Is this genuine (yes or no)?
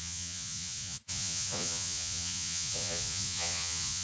no